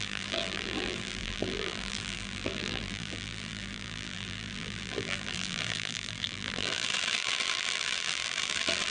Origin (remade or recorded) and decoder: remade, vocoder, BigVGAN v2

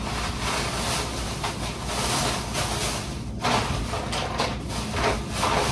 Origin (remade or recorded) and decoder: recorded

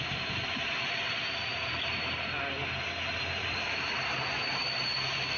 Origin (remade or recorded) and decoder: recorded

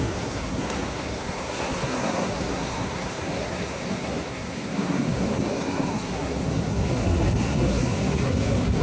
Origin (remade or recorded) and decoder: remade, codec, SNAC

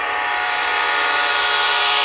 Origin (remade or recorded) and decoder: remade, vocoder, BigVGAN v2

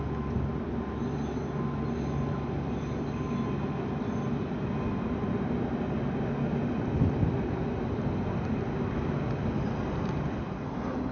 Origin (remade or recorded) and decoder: recorded